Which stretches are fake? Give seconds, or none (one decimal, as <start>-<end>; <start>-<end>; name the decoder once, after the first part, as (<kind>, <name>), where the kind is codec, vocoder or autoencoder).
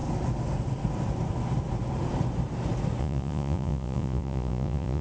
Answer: 3.0-5.0 (vocoder, Vocos)